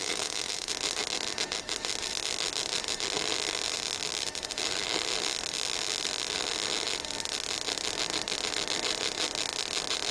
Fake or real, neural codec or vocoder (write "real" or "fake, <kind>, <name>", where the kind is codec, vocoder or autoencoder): real